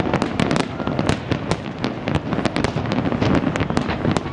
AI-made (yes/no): no